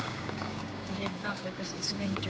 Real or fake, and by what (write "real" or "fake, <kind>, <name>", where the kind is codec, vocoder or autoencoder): fake, codec, DAC